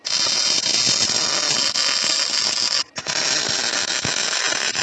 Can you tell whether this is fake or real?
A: real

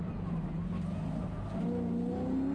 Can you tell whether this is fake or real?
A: real